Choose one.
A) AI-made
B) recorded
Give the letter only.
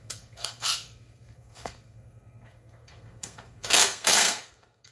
A